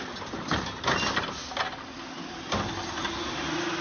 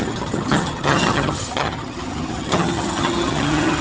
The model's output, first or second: second